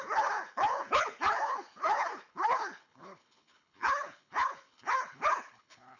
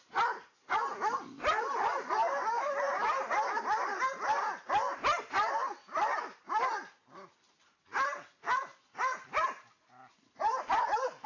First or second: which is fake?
first